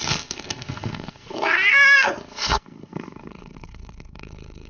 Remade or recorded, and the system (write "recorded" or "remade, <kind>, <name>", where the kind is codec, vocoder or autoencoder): remade, codec, SNAC